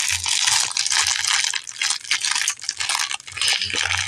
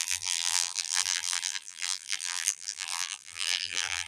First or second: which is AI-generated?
second